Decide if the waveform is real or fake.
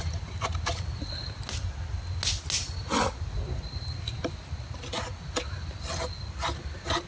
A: real